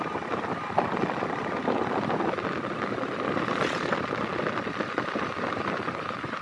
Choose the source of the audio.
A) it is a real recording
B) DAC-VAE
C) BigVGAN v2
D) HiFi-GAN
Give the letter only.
A